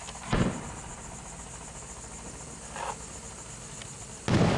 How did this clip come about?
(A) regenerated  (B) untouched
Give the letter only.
B